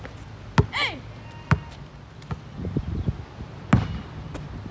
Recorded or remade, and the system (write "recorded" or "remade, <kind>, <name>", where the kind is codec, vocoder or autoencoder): recorded